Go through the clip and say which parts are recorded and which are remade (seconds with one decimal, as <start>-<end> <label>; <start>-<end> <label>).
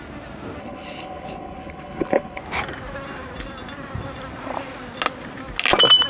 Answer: 0.0-0.6 recorded; 0.6-2.4 remade; 2.4-6.1 recorded